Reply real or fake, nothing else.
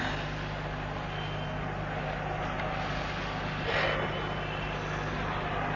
real